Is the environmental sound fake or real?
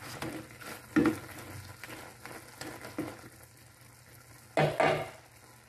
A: real